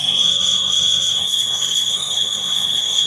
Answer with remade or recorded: remade